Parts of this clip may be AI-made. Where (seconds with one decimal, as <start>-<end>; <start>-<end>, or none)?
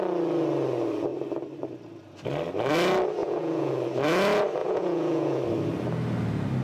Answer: 3.2-3.7; 4.6-5.4